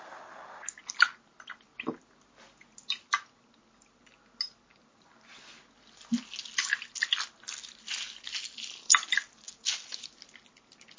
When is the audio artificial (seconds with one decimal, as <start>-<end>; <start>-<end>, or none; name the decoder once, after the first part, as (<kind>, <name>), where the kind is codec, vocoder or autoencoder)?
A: none